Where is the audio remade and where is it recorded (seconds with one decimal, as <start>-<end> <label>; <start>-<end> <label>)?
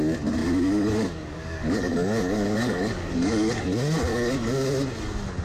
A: 0.0-0.4 recorded; 0.4-3.6 remade; 3.6-4.1 recorded; 4.1-4.7 remade; 4.7-5.4 recorded